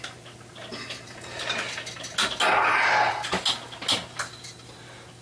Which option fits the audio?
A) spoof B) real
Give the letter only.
B